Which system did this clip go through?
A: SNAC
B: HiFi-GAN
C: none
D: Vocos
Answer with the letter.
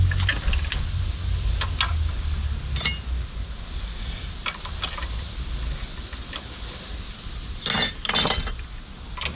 C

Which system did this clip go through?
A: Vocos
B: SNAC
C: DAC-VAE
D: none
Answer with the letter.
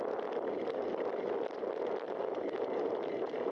D